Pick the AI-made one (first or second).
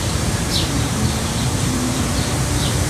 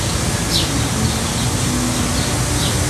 first